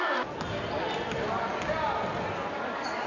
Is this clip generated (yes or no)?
no